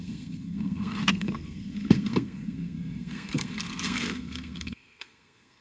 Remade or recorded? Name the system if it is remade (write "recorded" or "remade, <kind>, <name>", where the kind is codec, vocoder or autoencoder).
remade, codec, SNAC